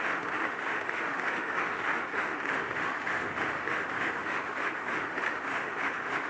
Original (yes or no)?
no